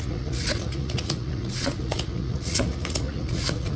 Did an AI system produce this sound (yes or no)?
yes